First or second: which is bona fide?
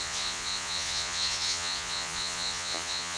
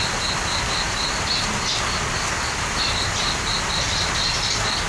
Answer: second